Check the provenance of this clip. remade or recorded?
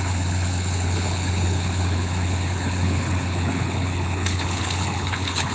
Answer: remade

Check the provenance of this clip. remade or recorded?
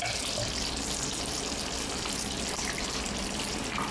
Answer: recorded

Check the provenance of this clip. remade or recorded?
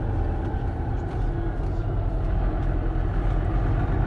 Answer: recorded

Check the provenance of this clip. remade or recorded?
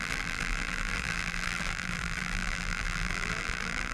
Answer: remade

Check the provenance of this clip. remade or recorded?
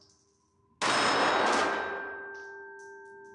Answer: recorded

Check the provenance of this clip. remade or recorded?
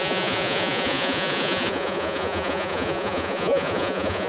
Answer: remade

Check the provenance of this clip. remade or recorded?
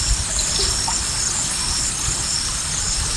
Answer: recorded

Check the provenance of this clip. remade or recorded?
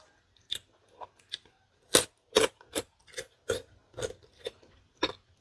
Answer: recorded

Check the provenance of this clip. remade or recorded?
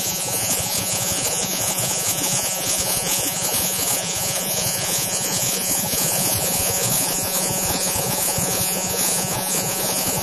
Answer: remade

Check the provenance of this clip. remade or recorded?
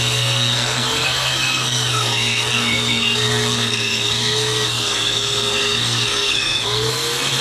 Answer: remade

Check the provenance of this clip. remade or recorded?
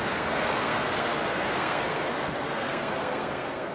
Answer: remade